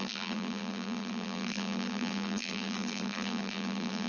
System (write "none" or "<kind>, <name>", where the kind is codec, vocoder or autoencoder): vocoder, BigVGAN v2